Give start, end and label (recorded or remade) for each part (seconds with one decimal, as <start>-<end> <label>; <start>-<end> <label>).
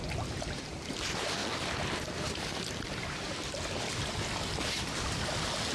0.0-5.7 recorded